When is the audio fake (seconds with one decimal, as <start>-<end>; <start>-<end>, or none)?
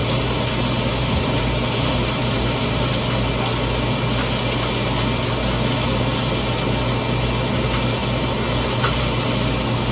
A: 0.0-0.5; 0.9-2.9; 8.0-9.0